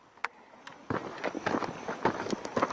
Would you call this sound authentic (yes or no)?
yes